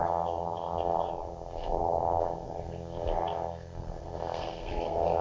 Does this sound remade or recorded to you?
remade